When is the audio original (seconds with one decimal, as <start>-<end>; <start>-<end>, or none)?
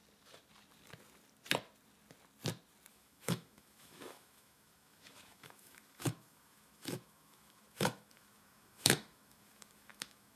0.0-2.9